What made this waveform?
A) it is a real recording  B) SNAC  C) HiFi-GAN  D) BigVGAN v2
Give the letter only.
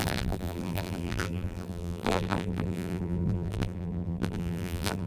D